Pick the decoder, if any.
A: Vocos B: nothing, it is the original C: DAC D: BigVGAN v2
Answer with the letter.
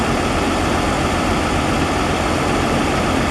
B